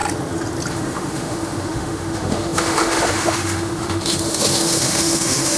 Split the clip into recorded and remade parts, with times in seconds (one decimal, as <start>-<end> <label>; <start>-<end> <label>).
0.0-0.7 recorded; 0.7-5.6 remade